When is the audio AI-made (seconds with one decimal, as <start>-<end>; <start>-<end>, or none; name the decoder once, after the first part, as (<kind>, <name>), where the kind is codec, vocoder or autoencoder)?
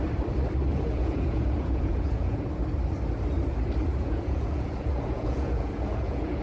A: 0.7-2.4 (vocoder, Vocos); 3.9-6.4